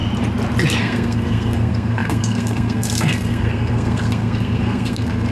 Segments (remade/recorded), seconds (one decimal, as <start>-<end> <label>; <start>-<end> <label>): 0.0-0.8 recorded; 0.8-5.3 remade